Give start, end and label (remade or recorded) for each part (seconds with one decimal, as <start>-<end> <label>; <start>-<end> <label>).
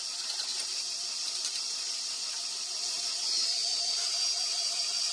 0.0-0.5 recorded; 0.5-2.6 remade; 2.6-5.1 recorded